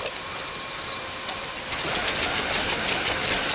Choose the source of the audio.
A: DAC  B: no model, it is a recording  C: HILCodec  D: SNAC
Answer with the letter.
B